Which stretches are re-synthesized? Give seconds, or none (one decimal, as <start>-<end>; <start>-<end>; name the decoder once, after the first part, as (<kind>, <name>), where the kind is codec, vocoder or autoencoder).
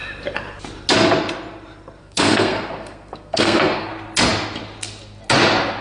2.0-3.9 (codec, SNAC)